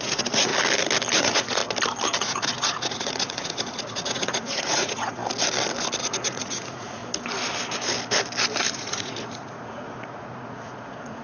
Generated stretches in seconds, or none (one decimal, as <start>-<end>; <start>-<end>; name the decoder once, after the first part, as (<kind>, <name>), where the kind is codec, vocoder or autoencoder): 0.0-0.5 (vocoder, Vocos); 1.2-1.6; 2.2-5.2; 6.0-7.0; 8.7-11.2